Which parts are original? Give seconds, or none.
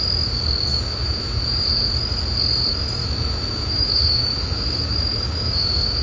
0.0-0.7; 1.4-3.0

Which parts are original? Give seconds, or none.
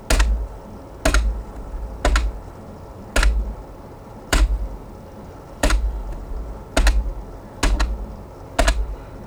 0.0-4.3; 6.2-9.3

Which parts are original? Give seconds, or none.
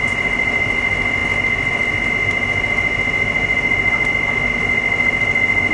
0.0-5.7